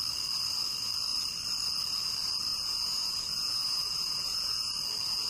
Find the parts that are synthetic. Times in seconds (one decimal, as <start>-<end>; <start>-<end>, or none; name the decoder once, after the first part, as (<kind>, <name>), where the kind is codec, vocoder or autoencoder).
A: 2.5-4.7 (vocoder, Vocos)